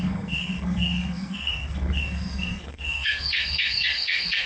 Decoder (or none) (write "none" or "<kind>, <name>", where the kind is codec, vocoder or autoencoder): codec, SNAC